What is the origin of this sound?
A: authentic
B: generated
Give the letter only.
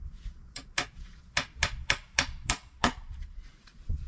B